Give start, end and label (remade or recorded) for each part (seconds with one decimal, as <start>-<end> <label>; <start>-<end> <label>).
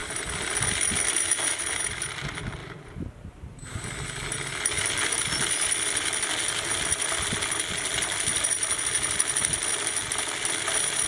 0.0-2.6 recorded; 2.6-3.8 remade; 3.8-11.1 recorded